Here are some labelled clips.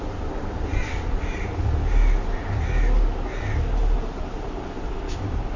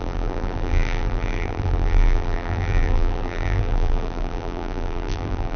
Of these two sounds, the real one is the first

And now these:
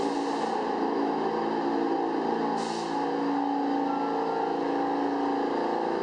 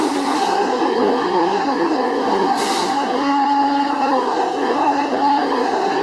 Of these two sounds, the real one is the first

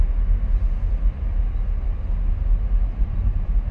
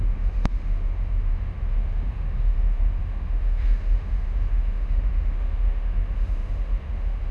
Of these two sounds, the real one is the first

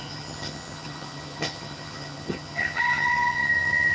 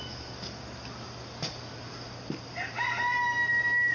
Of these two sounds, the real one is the second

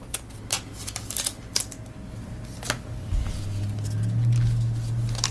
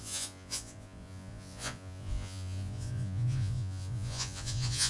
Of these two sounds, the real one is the first